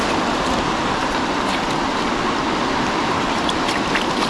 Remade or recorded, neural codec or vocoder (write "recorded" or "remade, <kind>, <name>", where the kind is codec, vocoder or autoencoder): recorded